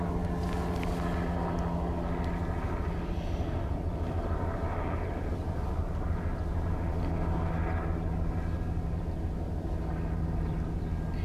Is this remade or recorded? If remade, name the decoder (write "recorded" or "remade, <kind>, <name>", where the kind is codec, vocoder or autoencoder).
recorded